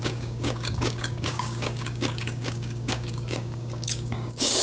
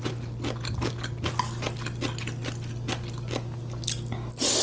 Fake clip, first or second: first